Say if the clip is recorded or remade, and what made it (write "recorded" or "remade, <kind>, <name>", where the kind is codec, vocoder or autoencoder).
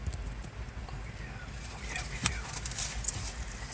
recorded